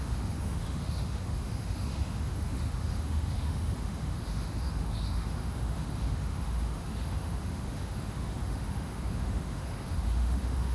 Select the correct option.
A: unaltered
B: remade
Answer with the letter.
B